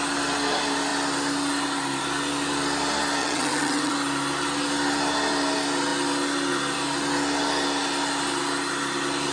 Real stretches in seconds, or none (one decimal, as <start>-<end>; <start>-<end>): 0.0-3.2; 3.9-9.3